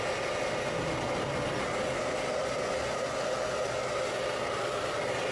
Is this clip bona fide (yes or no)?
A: yes